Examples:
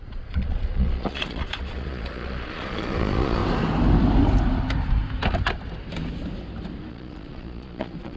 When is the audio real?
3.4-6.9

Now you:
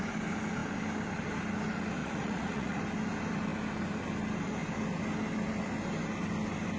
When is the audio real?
0.0-2.0; 2.8-6.8

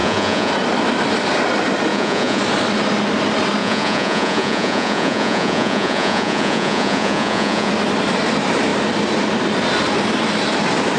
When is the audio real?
0.5-1.9; 2.4-3.6; 7.7-11.0